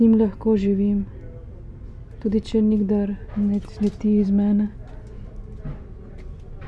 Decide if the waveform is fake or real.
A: real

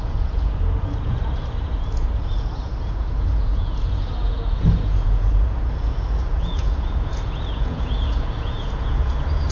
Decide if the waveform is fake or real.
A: fake